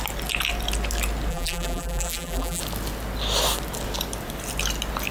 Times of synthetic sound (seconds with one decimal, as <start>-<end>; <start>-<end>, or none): 1.3-2.6